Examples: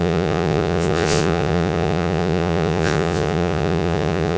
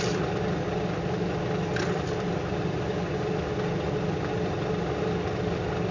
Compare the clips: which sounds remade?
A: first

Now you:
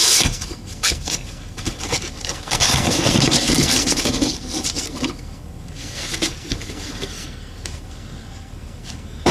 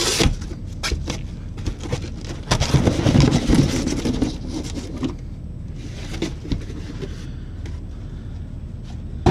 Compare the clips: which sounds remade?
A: first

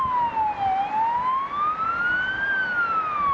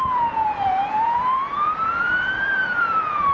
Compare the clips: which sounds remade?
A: second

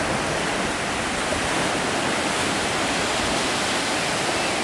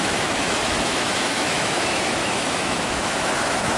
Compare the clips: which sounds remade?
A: second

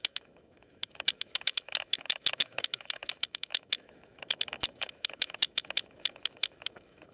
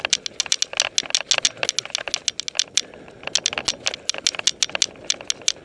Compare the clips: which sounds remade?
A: first